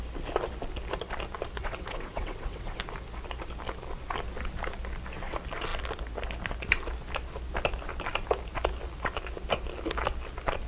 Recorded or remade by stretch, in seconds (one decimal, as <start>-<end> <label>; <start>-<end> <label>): 0.0-1.6 recorded; 1.6-2.8 remade; 2.8-10.7 recorded